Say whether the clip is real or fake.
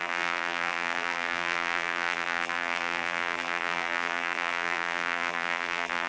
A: fake